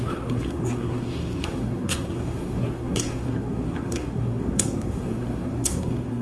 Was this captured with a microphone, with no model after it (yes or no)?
no